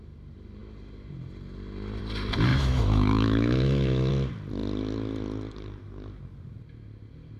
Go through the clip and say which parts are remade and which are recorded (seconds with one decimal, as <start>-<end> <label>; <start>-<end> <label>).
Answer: 0.0-2.5 recorded; 2.5-4.1 remade; 4.1-7.4 recorded